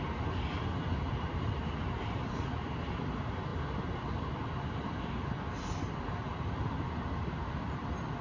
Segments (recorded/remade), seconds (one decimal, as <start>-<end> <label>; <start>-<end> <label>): 0.0-3.5 recorded; 3.5-6.0 remade; 6.0-8.2 recorded